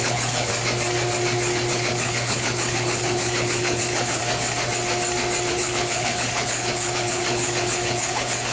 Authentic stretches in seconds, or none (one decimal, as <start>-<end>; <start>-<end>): 0.5-1.7; 4.2-5.5